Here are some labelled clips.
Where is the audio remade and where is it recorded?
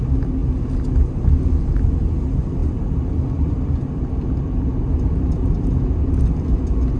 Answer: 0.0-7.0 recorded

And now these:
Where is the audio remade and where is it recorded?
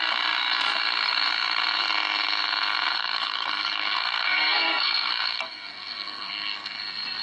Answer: 0.0-2.9 recorded; 2.9-6.8 remade; 6.8-7.2 recorded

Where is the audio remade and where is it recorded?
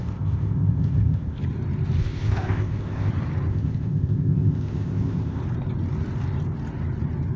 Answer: 0.0-1.4 remade; 1.4-2.0 recorded; 2.0-3.1 remade; 3.1-3.5 recorded; 3.5-5.4 remade; 5.4-7.4 recorded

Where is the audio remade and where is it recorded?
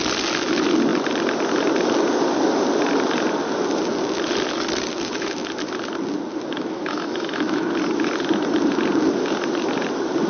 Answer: 0.0-4.9 recorded; 4.9-5.5 remade; 5.5-6.3 recorded; 6.3-7.7 remade; 7.7-10.3 recorded